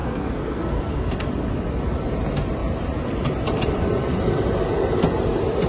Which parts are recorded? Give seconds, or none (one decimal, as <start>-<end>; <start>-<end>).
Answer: 1.3-5.7